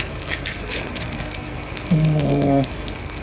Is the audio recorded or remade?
remade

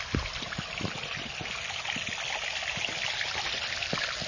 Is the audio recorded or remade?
recorded